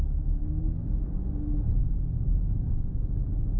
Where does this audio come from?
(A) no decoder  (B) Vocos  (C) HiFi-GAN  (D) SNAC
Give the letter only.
A